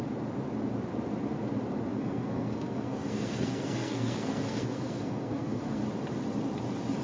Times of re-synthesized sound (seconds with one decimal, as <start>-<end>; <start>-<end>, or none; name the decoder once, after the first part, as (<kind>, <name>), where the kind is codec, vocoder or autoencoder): 1.9-5.8 (codec, SNAC)